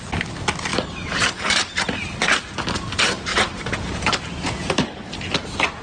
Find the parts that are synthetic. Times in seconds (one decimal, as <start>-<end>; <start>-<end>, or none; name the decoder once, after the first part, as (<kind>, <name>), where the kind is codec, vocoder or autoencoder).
0.7-2.2 (vocoder, BigVGAN v2); 3.3-5.3